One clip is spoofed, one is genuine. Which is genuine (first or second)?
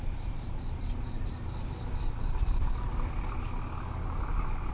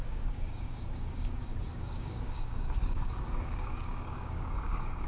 first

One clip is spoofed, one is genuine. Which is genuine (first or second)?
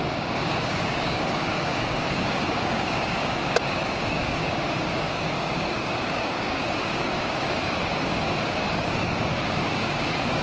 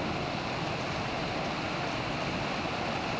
second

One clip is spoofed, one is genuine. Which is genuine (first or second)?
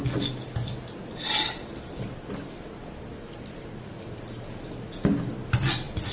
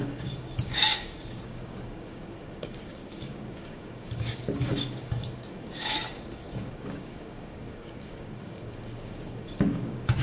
first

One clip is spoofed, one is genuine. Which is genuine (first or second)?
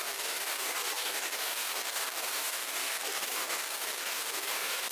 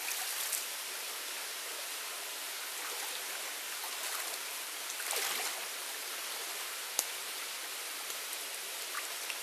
second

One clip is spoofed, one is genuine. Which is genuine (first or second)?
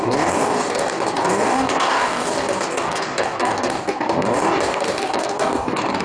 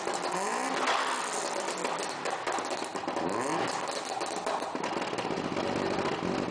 second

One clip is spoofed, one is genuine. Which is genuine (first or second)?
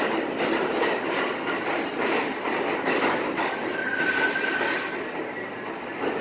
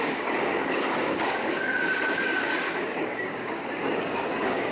first